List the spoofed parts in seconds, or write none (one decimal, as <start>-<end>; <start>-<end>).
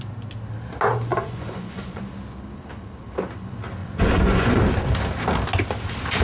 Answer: 1.1-2.0; 3.8-4.6